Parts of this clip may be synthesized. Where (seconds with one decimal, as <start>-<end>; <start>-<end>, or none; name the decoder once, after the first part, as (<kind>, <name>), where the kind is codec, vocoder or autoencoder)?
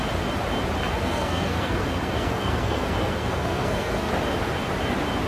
0.9-4.1 (codec, SNAC)